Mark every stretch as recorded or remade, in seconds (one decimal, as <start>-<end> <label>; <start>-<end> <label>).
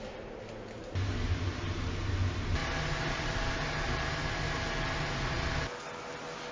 0.0-6.5 recorded